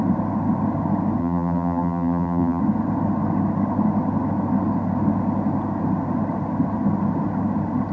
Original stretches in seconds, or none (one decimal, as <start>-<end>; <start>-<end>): 0.0-1.2; 2.6-7.9